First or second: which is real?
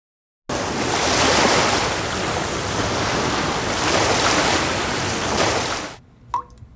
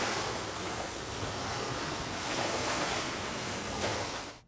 first